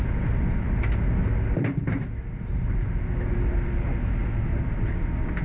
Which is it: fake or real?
real